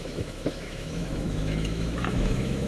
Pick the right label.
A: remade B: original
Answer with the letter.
A